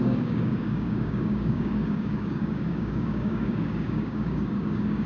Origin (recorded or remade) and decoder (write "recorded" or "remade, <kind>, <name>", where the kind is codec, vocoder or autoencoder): remade, codec, DAC